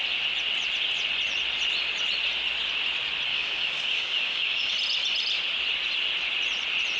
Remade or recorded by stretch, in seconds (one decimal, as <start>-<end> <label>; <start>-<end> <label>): 0.0-3.3 recorded; 3.3-4.7 remade; 4.7-7.0 recorded